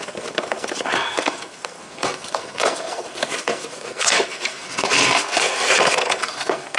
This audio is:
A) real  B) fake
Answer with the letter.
B